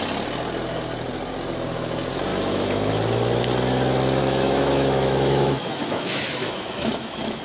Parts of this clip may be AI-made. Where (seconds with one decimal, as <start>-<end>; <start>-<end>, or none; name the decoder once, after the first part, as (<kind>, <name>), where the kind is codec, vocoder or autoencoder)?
2.3-2.9 (autoencoder, DAC-VAE); 4.2-7.4